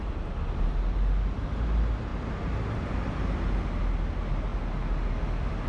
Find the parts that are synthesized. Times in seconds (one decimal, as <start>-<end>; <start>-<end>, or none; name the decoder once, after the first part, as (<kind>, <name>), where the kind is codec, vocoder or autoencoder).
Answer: none